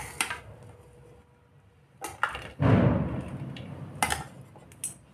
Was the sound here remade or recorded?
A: recorded